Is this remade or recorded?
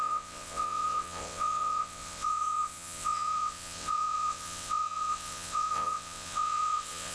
remade